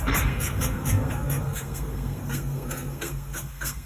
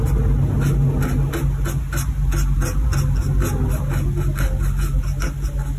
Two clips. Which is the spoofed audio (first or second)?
first